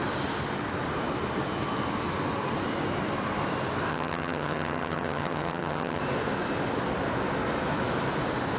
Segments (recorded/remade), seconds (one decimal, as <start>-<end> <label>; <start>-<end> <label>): 0.0-3.9 recorded; 3.9-6.0 remade; 6.0-8.6 recorded